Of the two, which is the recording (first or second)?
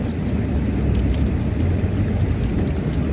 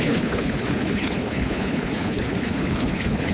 first